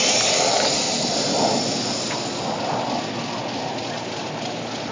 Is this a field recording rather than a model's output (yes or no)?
yes